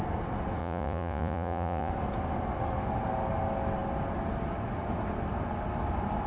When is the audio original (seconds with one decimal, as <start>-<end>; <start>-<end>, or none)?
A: 0.0-0.6; 1.9-6.3